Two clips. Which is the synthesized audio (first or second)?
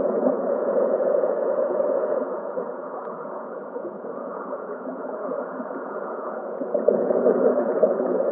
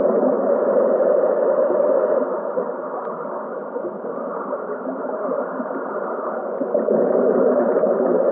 first